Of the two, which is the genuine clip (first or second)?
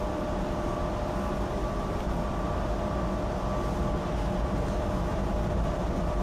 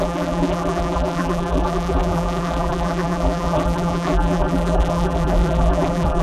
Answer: first